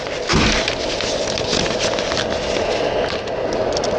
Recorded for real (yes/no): yes